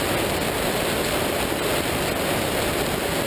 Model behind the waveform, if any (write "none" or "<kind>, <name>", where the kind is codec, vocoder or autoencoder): none